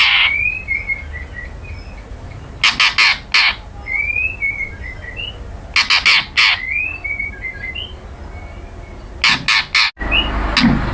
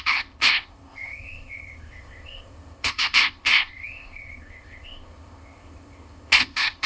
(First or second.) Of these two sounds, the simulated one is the second